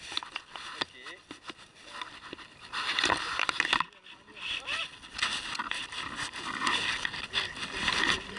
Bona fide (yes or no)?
yes